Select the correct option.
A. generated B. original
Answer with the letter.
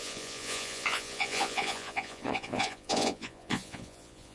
A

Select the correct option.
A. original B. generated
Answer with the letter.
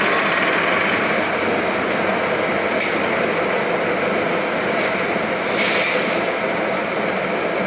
A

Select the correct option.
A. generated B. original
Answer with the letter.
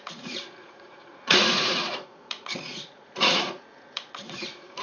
A